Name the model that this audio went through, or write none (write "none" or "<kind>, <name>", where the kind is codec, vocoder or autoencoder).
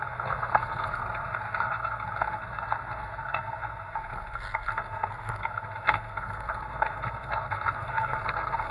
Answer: codec, SNAC